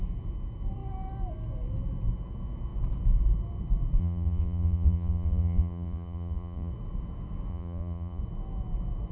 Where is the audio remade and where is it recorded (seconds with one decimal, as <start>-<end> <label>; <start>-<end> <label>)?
0.0-4.0 recorded; 4.0-6.7 remade; 6.7-7.5 recorded; 7.5-8.2 remade; 8.2-9.1 recorded